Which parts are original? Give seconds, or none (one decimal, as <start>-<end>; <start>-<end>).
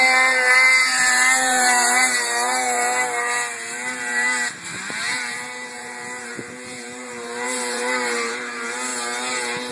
8.9-9.7